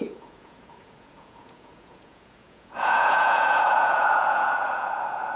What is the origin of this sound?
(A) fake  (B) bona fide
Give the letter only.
A